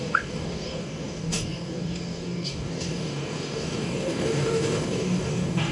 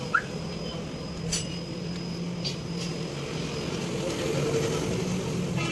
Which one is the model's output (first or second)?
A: first